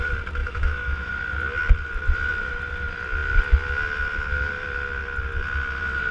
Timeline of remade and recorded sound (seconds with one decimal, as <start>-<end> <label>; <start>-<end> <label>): 0.0-0.4 recorded; 0.4-1.1 remade; 1.1-6.1 recorded